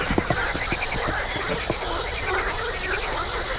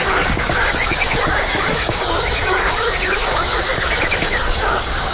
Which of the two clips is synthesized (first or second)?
second